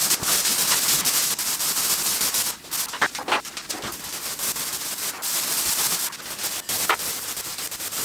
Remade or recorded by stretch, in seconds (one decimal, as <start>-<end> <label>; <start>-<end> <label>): 0.0-0.6 recorded; 0.6-1.2 remade; 1.2-8.0 recorded